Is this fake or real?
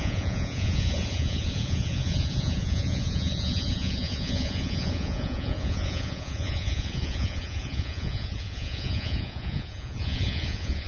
fake